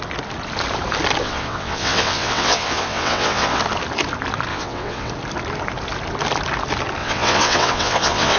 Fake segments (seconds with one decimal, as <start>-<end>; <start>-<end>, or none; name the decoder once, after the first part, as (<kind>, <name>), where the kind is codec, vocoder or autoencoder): 1.2-3.6 (vocoder, WaveNeXt); 4.5-5.1; 7.0-8.4